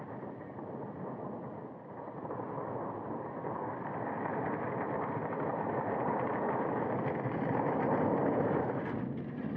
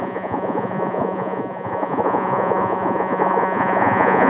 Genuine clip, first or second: first